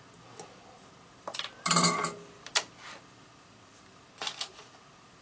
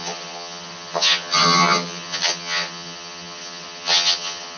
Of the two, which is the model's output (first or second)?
second